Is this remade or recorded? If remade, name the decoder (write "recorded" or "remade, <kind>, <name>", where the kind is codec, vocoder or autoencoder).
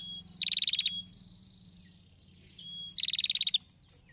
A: recorded